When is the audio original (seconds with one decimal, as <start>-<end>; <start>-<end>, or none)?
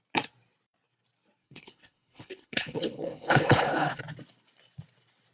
0.0-1.4; 4.0-5.3